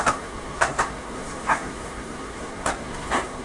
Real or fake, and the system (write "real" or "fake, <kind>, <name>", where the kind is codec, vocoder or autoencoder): fake, codec, SNAC